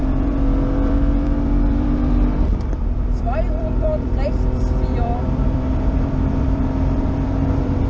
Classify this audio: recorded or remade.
remade